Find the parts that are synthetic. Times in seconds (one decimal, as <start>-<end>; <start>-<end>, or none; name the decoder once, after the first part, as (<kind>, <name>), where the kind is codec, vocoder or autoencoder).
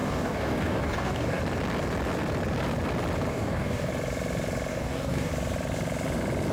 0.0-1.4 (codec, DAC); 3.3-3.9; 4.7-5.3